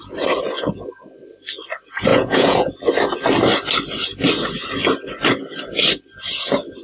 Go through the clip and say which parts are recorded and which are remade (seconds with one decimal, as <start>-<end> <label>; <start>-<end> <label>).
0.0-2.1 recorded; 2.1-2.7 remade; 2.7-6.8 recorded